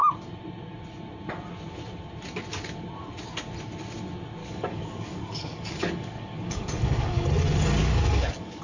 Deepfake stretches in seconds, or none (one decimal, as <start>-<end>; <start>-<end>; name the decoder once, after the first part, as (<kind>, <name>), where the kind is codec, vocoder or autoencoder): 4.4-7.3 (codec, DAC); 7.8-8.6